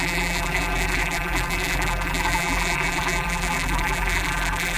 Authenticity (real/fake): fake